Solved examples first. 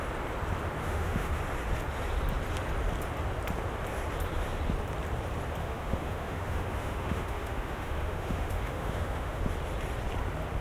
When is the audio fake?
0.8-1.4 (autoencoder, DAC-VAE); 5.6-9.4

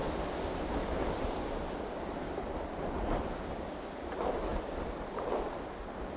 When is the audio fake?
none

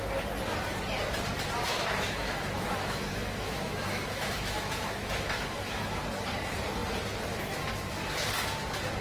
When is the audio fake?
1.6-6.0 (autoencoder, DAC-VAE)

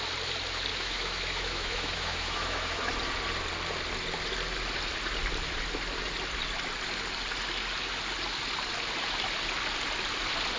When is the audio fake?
0.7-2.9 (autoencoder, DAC-VAE)

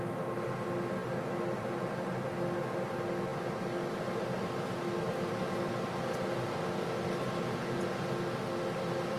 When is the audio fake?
none

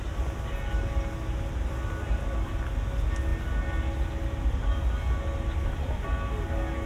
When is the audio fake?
none